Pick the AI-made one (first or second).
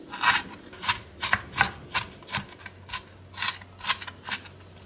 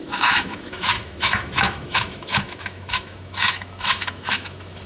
second